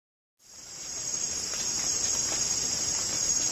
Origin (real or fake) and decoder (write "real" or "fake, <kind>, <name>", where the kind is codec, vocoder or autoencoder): real